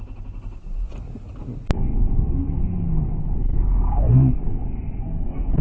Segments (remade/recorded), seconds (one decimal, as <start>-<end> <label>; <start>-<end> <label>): 0.0-1.9 recorded; 1.9-4.4 remade; 4.4-5.6 recorded